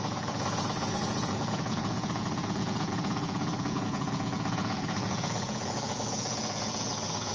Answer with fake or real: fake